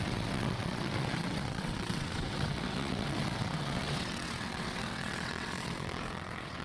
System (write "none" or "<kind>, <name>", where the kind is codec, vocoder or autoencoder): vocoder, WaveNeXt